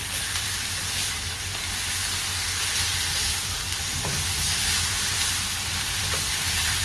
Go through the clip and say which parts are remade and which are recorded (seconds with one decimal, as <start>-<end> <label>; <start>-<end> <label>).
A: 0.0-1.3 remade; 1.3-2.9 recorded; 2.9-6.1 remade; 6.1-6.8 recorded